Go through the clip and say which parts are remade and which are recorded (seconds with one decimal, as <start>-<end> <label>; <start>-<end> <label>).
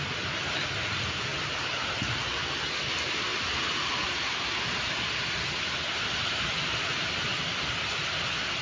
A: 0.0-8.6 recorded